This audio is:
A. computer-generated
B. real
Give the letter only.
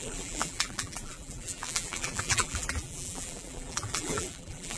A